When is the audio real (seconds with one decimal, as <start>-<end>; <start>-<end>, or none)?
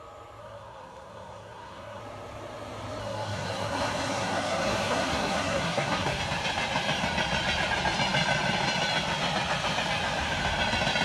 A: 0.0-0.4; 2.0-3.0; 6.2-11.0